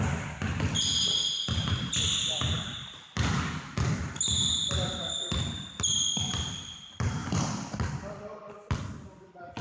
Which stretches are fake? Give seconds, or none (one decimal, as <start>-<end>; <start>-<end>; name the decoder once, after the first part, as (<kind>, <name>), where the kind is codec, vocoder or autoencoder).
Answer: none